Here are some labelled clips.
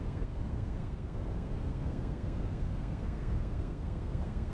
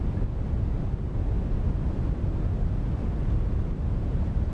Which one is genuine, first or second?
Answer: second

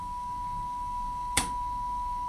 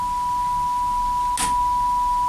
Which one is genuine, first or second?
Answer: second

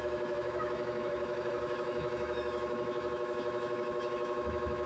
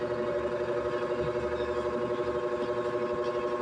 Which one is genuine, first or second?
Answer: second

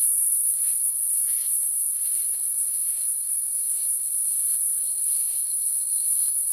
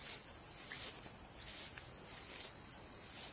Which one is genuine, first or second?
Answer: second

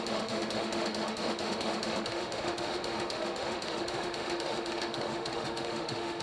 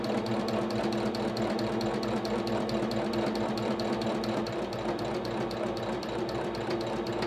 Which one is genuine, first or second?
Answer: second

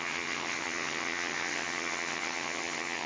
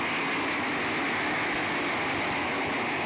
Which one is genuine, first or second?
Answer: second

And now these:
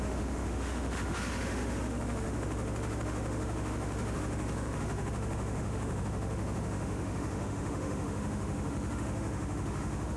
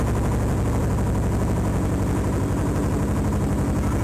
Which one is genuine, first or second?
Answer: second